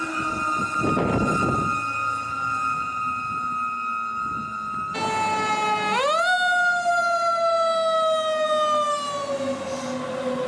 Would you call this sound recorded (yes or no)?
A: yes